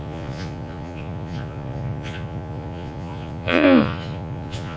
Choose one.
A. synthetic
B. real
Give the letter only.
A